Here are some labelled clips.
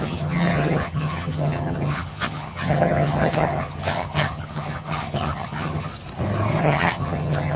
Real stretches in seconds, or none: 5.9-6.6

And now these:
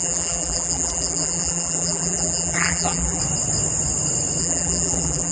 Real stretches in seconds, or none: 3.2-4.4

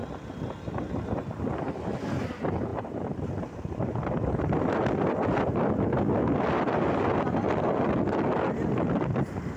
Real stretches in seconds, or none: 0.0-9.6

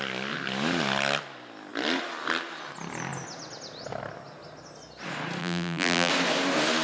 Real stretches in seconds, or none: 0.0-5.4; 6.1-6.8